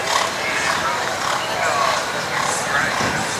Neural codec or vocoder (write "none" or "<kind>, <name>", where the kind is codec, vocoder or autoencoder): none